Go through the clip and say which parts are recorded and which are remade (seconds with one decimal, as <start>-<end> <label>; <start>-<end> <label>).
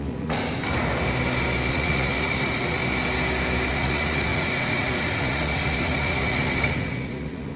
0.0-0.6 remade; 0.6-1.7 recorded; 1.7-2.8 remade; 2.8-3.7 recorded; 3.7-7.6 remade